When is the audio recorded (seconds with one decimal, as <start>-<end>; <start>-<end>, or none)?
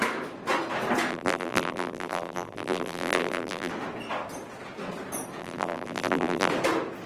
0.0-1.1; 3.7-5.4; 6.5-7.1